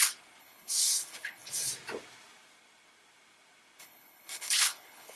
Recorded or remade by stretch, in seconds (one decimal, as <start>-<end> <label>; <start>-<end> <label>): 0.0-0.4 recorded; 0.4-1.7 remade; 1.7-3.8 recorded; 3.8-5.2 remade